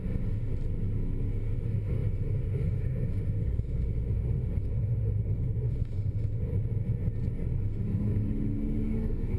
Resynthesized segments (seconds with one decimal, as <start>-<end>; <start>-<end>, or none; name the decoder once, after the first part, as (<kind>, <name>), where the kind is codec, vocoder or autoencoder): 0.0-0.5 (autoencoder, DAC-VAE); 1.3-6.5; 7.6-9.4

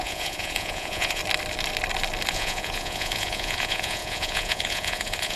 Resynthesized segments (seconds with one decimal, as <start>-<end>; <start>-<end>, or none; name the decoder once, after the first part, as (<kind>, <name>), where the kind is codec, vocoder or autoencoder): 0.0-1.2 (vocoder, Vocos); 2.3-5.4

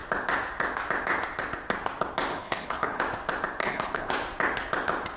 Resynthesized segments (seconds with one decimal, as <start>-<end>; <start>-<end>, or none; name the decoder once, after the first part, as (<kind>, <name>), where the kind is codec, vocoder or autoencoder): 2.3-3.0 (codec, HILCodec); 3.6-4.1

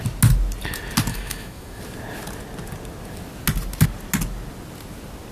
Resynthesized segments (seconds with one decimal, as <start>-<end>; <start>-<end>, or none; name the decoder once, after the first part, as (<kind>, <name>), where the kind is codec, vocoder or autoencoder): 1.1-1.8 (autoencoder, DAC-VAE)

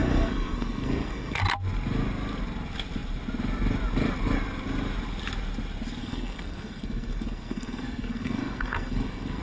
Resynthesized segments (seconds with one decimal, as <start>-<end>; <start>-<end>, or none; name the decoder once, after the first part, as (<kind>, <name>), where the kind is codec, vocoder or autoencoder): 0.0-1.4 (codec, SNAC); 6.0-9.4

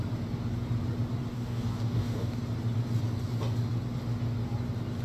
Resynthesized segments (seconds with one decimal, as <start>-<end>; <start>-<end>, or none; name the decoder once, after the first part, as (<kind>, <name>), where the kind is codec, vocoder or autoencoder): 1.3-2.4 (codec, DAC)

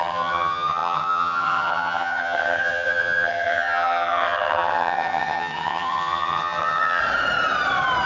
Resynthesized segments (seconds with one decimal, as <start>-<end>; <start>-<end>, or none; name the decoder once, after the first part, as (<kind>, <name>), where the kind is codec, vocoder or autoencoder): 0.0-7.0 (vocoder, HiFi-GAN)

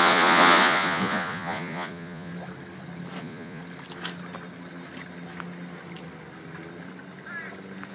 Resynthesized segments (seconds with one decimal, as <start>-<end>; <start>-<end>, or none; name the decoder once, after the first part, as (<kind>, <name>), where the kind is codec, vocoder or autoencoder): 0.0-2.3 (vocoder, Vocos); 3.2-3.6